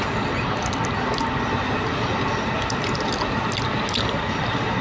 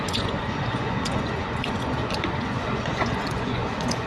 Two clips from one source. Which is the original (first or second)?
first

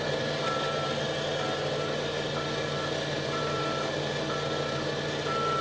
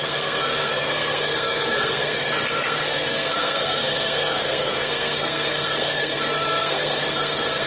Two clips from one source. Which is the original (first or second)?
first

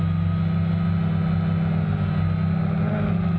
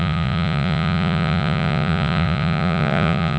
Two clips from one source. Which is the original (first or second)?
first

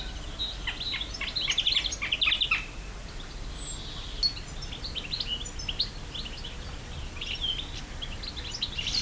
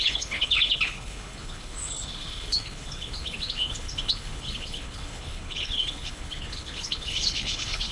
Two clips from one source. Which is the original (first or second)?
first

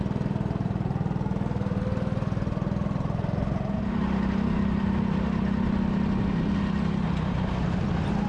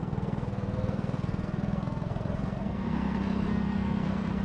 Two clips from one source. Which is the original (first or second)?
first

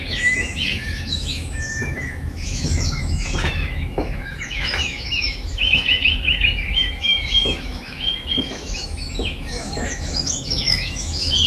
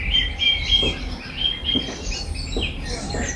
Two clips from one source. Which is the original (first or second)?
second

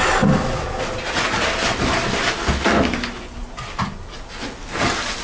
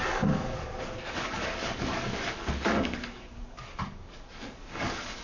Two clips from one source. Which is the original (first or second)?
first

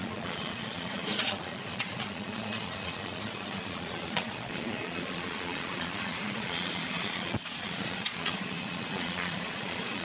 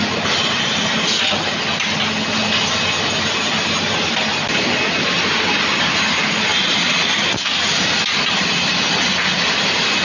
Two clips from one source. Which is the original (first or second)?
second